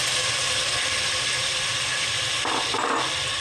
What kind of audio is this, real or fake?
real